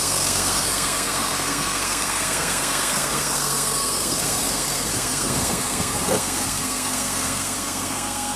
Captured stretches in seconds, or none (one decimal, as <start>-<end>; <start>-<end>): none